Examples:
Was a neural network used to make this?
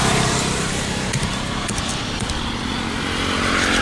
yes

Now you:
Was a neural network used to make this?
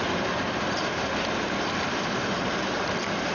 no